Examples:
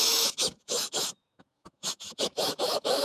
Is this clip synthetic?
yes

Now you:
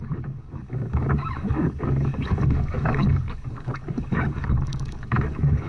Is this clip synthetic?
yes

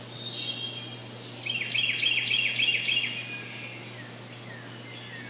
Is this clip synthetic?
no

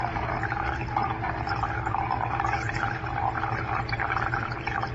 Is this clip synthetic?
yes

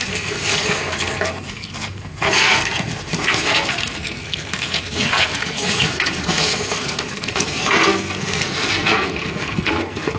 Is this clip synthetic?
yes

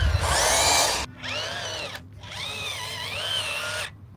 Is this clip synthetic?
no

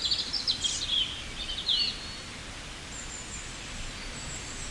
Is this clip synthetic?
no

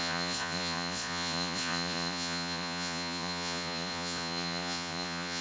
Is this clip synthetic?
yes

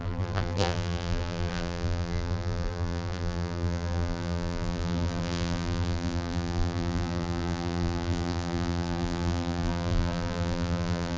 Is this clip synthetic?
yes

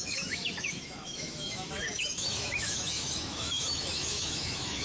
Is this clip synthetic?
yes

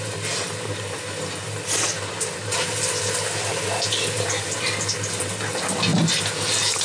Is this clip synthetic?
no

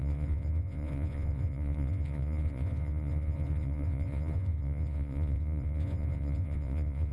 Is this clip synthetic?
yes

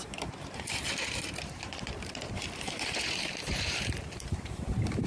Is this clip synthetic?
yes